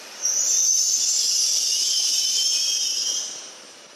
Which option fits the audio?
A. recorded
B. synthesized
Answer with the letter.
B